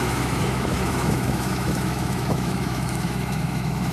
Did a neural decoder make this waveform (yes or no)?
yes